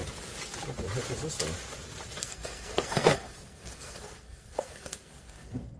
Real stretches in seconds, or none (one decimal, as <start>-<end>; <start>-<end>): 0.0-2.2